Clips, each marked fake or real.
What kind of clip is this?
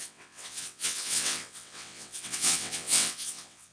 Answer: fake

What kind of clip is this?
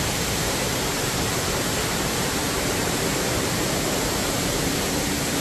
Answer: fake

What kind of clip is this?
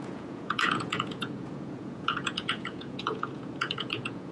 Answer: fake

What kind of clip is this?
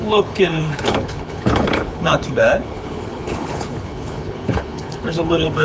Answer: fake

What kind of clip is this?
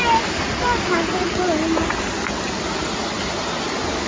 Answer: real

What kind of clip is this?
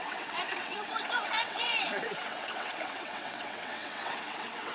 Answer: fake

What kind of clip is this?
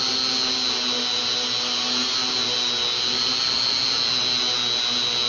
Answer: real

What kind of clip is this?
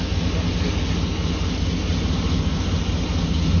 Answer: real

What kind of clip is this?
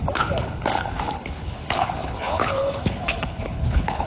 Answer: fake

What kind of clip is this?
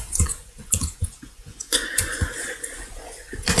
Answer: fake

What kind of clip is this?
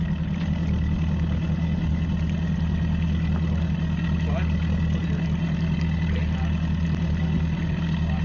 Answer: real